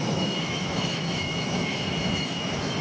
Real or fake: fake